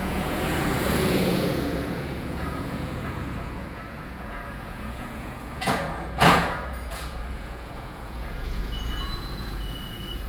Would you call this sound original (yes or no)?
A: no